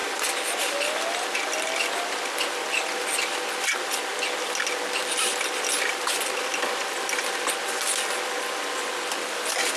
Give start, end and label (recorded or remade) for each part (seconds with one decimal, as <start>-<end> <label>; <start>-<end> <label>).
0.0-9.8 recorded